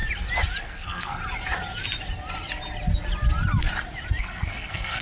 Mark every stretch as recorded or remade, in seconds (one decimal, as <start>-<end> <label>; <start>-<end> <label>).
0.0-0.6 recorded; 0.6-1.2 remade; 1.2-4.2 recorded; 4.2-5.0 remade